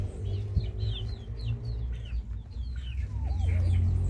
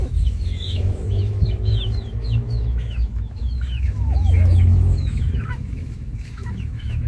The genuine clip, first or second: first